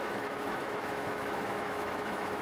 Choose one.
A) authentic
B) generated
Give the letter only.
B